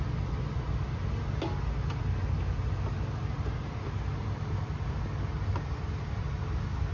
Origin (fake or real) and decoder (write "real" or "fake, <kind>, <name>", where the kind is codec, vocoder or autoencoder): real